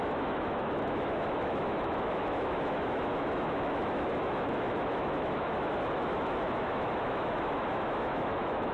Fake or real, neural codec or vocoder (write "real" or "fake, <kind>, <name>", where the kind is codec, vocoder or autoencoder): fake, autoencoder, DAC-VAE